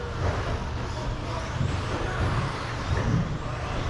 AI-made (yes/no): no